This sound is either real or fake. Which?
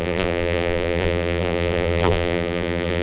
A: fake